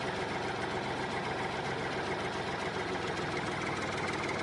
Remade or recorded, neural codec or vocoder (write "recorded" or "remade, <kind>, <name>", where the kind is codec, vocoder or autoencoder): recorded